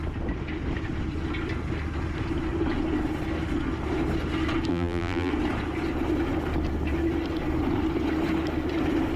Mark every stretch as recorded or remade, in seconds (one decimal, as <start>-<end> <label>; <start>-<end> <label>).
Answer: 0.0-4.7 recorded; 4.7-5.3 remade; 5.3-9.2 recorded